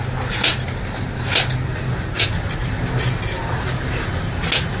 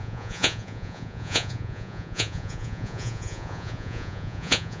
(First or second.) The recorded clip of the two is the first